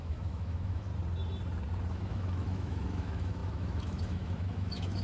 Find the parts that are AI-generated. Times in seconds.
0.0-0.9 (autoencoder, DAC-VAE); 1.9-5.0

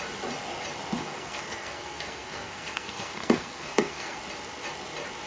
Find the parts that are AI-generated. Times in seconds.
1.0-4.2 (codec, SNAC)

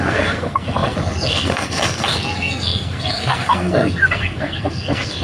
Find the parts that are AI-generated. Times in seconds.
0.0-5.2 (codec, SNAC)

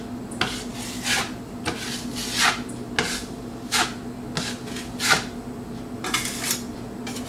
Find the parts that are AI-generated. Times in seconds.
0.7-2.1 (vocoder, BigVGAN v2)

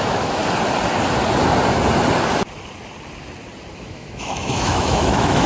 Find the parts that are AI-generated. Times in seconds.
0.0-0.4 (autoencoder, DAC-VAE); 3.7-5.5

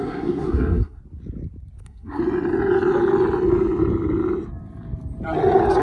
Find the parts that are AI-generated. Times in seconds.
0.0-1.0 (codec, SNAC); 1.8-2.2

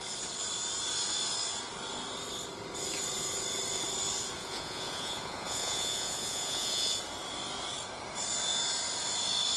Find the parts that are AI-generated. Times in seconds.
4.4-7.0 (vocoder, Vocos)